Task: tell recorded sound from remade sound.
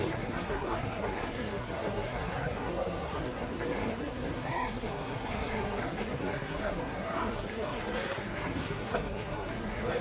remade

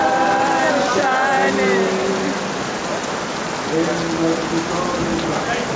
recorded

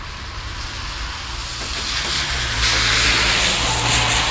recorded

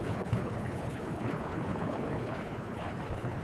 remade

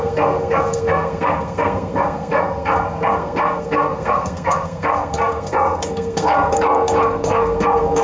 remade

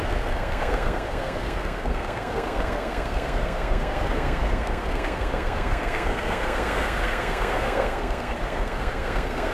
remade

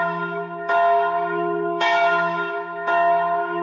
remade